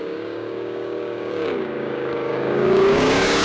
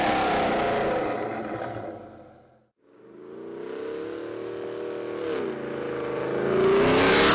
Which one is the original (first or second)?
second